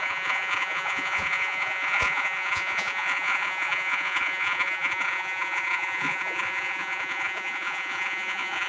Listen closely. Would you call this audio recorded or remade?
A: remade